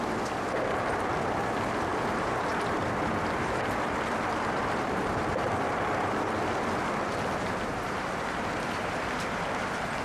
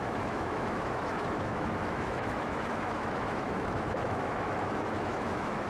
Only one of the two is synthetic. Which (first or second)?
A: second